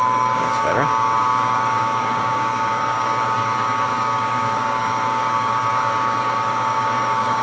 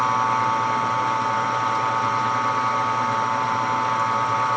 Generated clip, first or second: first